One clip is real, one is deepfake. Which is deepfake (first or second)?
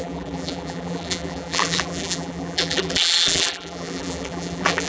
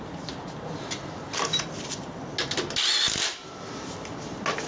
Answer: first